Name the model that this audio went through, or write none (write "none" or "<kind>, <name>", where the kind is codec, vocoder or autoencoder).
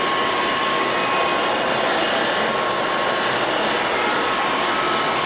none